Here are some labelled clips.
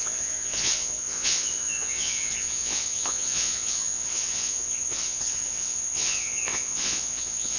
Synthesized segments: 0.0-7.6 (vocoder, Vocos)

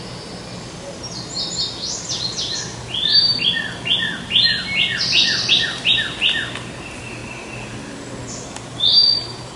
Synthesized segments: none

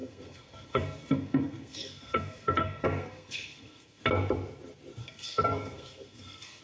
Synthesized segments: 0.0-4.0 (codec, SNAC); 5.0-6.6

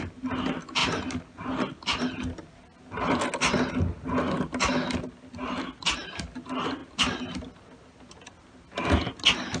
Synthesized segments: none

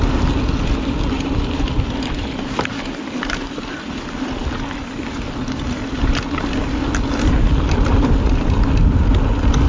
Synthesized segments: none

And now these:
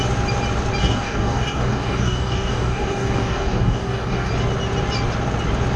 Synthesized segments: 0.8-4.3 (codec, DAC)

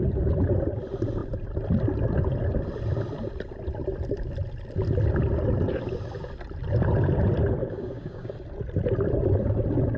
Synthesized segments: 7.6-8.3 (codec, DAC)

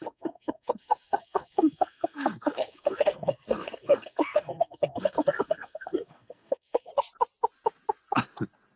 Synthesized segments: 0.0-6.9 (codec, SNAC)